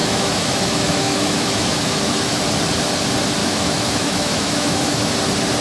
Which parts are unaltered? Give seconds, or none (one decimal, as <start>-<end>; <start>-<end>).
2.4-3.4; 5.1-5.6